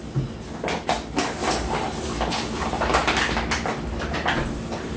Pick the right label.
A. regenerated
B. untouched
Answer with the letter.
B